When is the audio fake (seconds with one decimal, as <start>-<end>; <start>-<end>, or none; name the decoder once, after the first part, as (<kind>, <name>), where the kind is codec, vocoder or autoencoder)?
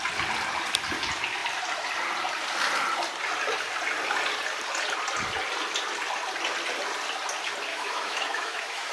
7.7-8.9 (autoencoder, DAC-VAE)